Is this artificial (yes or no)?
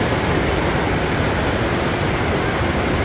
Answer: no